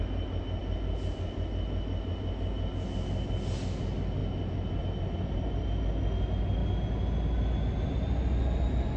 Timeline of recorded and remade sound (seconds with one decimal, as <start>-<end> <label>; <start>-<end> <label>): 0.0-9.0 recorded